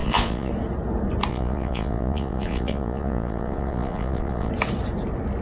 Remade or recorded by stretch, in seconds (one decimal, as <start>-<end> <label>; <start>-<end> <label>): 0.0-0.5 remade; 0.5-1.3 recorded; 1.3-4.5 remade; 4.5-5.4 recorded